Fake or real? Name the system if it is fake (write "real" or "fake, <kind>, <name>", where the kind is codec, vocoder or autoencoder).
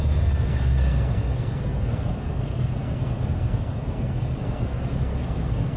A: fake, codec, SNAC